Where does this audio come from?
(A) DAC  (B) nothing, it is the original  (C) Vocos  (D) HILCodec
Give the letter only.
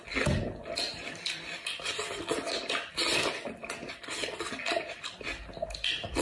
B